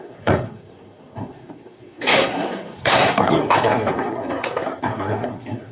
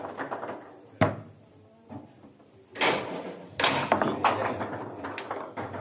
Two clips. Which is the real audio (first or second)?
second